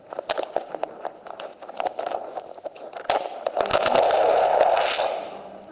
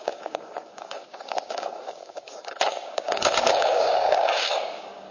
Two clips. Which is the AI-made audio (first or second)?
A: second